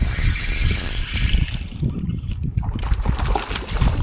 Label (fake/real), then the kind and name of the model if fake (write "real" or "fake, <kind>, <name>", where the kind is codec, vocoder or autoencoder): real